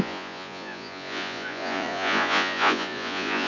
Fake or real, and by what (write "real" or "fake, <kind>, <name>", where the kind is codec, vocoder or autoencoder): fake, vocoder, Vocos